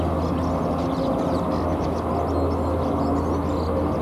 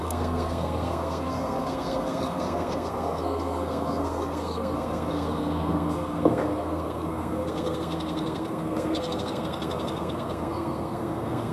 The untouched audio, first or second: first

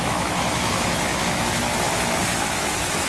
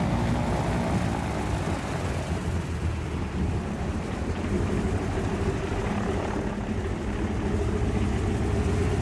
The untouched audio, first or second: second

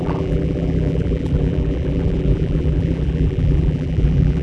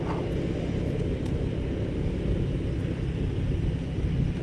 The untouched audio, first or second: second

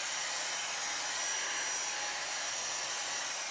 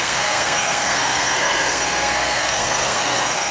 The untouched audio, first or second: first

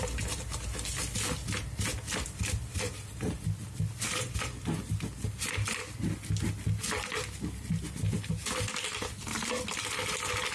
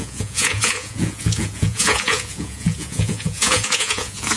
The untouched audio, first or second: first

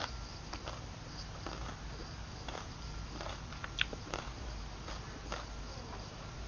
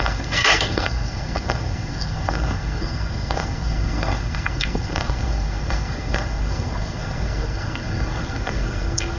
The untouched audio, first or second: first